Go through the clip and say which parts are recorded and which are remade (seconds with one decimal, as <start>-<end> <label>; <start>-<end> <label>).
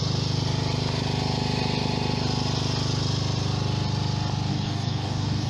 0.0-4.5 recorded; 4.5-5.5 remade